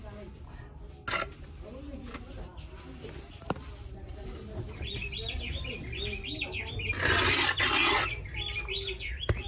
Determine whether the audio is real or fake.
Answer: real